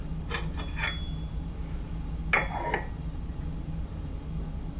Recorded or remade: recorded